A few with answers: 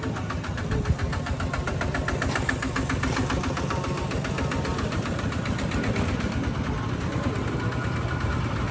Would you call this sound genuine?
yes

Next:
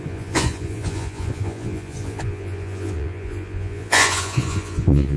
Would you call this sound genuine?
no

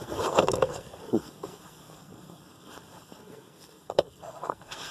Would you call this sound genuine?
no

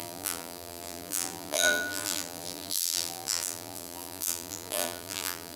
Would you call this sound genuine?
no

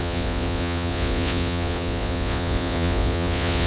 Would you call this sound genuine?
no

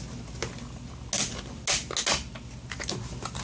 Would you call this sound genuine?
yes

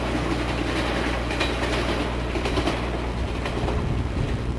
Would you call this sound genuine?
yes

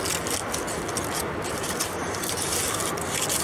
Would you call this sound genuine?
yes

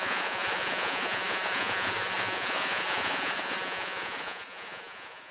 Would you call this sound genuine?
no